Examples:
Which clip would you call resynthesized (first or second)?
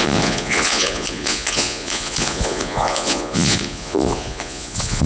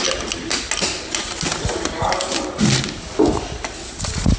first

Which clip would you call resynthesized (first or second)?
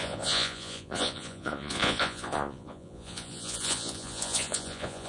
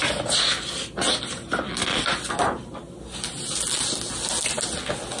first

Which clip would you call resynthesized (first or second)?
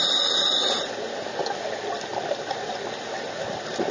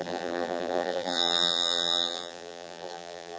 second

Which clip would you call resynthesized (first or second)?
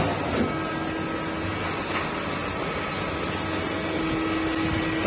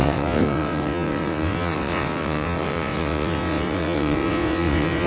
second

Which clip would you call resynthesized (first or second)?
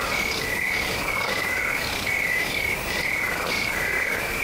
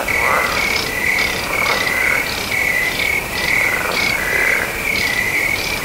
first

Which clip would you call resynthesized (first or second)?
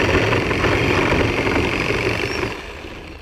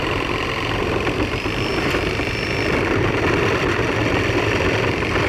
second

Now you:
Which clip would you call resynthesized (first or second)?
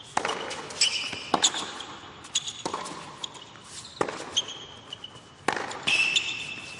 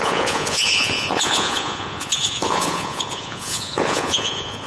second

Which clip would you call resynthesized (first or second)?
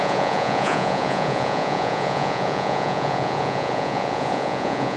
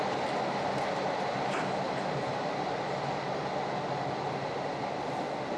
first